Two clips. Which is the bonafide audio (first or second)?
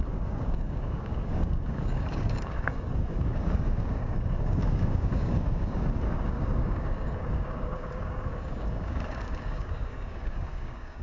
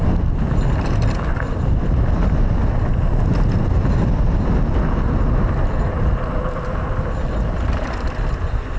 second